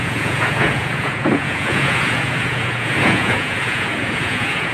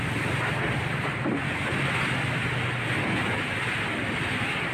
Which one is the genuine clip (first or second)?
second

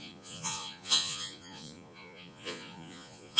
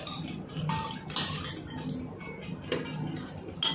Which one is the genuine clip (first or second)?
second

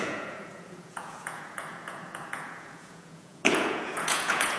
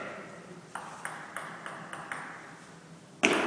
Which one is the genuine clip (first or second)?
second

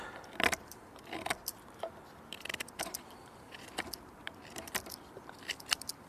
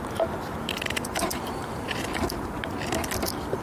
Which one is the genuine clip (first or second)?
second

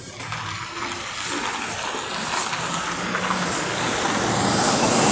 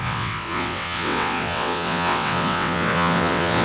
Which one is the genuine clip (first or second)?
first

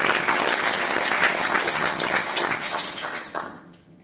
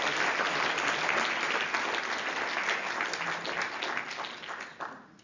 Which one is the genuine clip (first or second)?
second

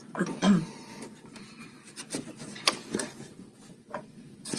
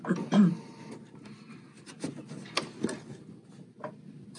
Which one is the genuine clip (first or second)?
second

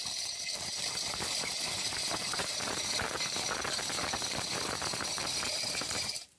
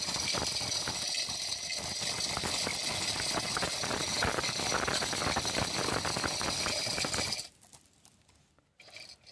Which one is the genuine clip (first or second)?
second